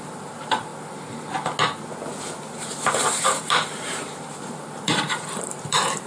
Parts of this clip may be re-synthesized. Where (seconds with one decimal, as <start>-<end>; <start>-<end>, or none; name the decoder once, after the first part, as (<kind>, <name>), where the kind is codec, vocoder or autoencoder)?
0.0-0.7 (vocoder, BigVGAN v2); 2.5-6.1